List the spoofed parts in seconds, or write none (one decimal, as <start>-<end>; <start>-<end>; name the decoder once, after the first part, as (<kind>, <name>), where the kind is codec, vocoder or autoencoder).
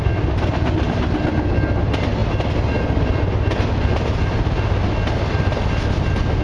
none